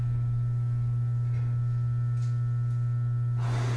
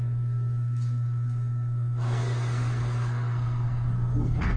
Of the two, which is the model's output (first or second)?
second